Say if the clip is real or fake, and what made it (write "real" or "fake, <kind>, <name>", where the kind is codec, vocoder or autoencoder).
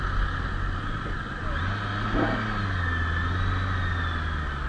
real